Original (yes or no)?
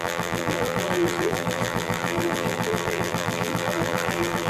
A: no